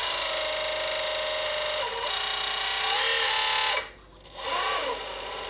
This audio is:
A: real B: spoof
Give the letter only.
A